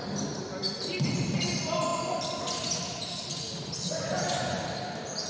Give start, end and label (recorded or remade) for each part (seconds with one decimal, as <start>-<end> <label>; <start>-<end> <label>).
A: 0.0-5.3 recorded